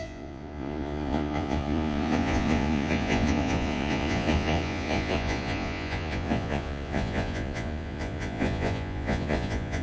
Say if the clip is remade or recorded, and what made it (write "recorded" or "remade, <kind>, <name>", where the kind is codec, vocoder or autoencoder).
remade, vocoder, Vocos